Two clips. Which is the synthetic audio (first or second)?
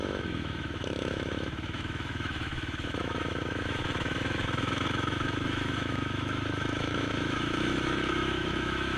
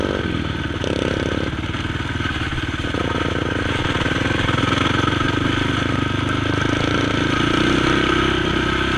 first